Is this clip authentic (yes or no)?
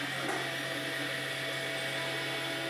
yes